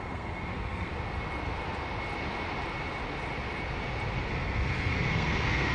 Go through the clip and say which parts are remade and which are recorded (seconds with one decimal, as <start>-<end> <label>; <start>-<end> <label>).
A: 0.0-0.9 remade; 0.9-4.3 recorded; 4.3-5.7 remade